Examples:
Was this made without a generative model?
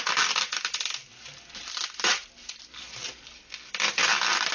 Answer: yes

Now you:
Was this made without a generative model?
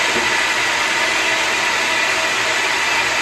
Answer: yes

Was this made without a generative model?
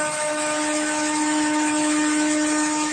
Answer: no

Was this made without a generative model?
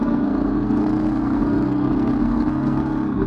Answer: no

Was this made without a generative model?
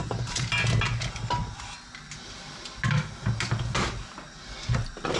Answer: yes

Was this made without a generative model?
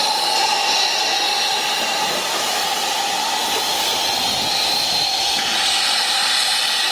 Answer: yes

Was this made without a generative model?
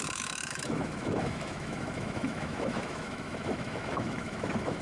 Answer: no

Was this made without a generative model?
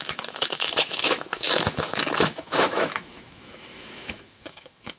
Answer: no